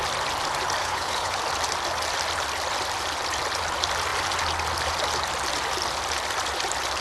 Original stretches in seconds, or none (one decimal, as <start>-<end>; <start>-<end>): 0.0-0.8; 1.4-7.0